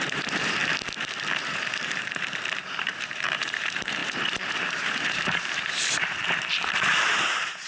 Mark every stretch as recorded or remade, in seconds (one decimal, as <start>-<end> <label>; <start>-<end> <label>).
0.0-0.6 remade; 0.6-1.4 recorded; 1.4-7.7 remade